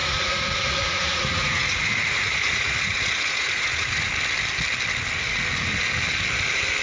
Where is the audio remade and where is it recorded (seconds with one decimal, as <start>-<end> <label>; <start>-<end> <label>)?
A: 0.0-4.1 remade; 4.1-6.8 recorded